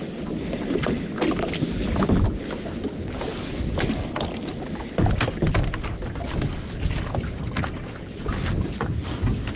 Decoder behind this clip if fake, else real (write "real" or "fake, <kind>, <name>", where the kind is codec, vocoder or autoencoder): real